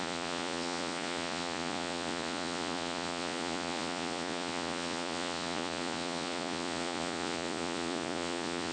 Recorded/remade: remade